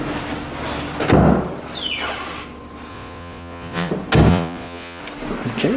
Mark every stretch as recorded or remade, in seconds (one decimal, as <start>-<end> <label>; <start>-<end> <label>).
0.0-2.9 recorded; 2.9-3.9 remade; 3.9-4.3 recorded; 4.3-5.0 remade; 5.0-5.8 recorded